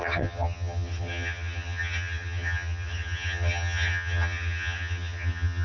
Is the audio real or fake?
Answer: fake